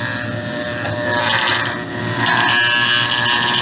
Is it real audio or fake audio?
real